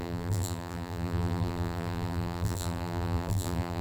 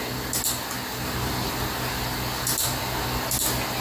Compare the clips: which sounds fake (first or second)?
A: first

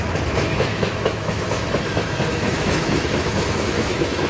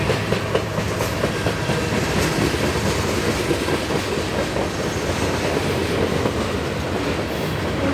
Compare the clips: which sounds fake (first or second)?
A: first